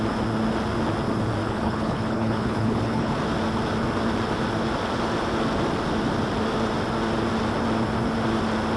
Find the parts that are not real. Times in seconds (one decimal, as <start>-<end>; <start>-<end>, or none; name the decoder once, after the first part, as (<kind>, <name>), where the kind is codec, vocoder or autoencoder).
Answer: 1.4-3.2 (codec, HILCodec)